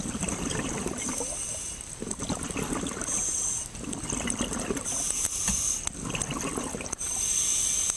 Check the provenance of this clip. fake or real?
real